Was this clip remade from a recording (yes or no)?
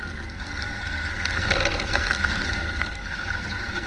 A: yes